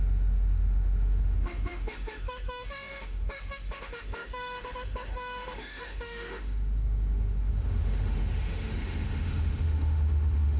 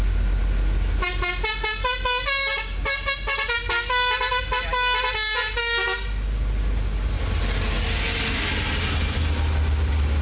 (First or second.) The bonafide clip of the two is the second